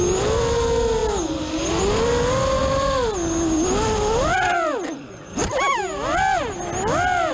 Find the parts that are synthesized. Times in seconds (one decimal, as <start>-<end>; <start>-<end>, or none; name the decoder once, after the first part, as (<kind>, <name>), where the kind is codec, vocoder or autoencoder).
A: none